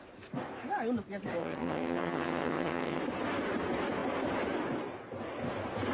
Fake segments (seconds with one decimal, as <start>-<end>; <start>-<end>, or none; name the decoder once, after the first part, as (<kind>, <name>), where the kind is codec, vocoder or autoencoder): 1.4-3.0 (vocoder, HiFi-GAN)